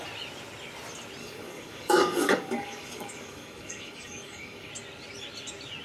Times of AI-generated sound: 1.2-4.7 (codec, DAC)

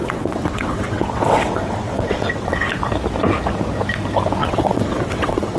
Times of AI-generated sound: 0.0-2.7 (vocoder, WaveNeXt); 4.4-5.6

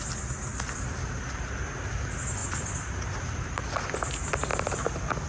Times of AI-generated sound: 0.5-1.2 (vocoder, BigVGAN v2); 4.5-5.3

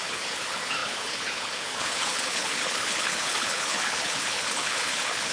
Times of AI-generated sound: 0.0-5.3 (codec, HILCodec)